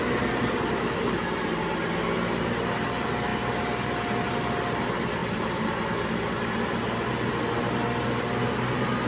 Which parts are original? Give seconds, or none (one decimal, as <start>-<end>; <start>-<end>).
0.0-9.1

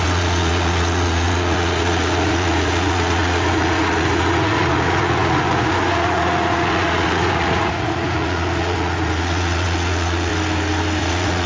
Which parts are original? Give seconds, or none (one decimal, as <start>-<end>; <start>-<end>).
10.3-11.0

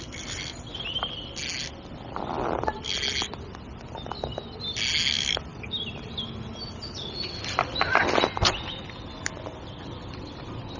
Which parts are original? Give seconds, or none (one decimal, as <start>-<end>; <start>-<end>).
0.0-10.8

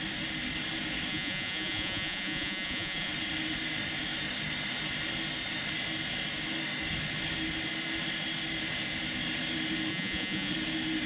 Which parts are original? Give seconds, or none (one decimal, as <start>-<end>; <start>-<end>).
0.0-1.1; 3.1-9.9; 10.5-11.1

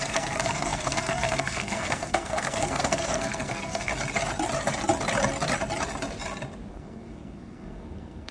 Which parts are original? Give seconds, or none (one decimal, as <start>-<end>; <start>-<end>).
3.9-6.7

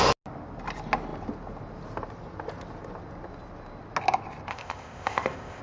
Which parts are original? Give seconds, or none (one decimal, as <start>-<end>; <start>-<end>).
0.0-4.5